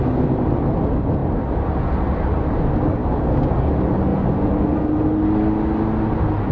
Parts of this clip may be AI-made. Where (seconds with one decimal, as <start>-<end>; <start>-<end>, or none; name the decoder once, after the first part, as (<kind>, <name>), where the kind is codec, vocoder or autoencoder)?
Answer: 3.0-3.5 (codec, DAC)